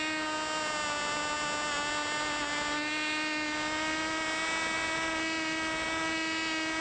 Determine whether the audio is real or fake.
real